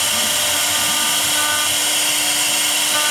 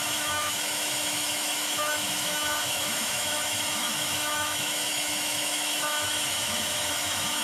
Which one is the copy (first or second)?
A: second